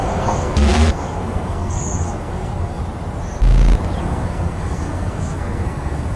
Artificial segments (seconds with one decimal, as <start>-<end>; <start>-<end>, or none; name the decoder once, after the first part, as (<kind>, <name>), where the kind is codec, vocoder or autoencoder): 0.0-2.8 (codec, SNAC); 4.0-6.2